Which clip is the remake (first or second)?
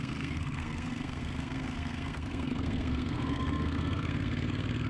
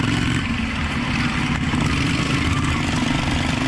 first